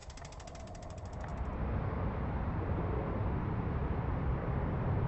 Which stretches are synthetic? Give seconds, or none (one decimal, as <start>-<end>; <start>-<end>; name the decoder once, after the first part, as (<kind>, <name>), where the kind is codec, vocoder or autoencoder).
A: 0.6-1.3 (vocoder, BigVGAN v2); 2.6-3.2; 3.8-5.1